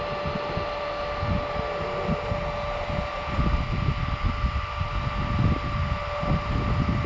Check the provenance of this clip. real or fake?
real